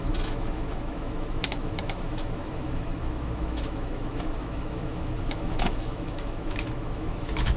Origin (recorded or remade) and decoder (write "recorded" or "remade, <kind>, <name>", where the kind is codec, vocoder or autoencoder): remade, autoencoder, DAC-VAE